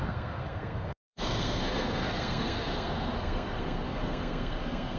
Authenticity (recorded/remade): remade